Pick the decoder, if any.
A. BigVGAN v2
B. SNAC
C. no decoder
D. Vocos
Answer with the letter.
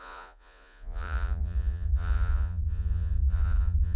D